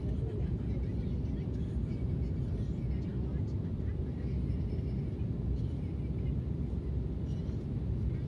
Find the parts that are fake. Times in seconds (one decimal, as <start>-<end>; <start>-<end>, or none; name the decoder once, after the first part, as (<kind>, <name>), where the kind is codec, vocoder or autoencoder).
none